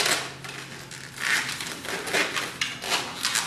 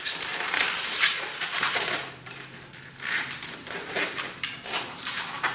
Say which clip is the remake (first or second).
second